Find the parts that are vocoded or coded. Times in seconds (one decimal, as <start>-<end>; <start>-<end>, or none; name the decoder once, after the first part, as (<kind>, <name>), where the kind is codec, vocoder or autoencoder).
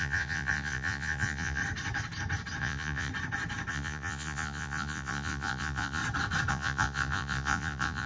0.0-1.6 (vocoder, Vocos); 2.6-3.1; 3.7-6.0; 6.5-8.1